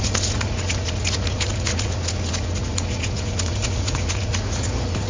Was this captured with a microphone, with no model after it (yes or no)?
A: no